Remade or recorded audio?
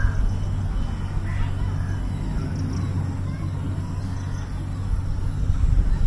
recorded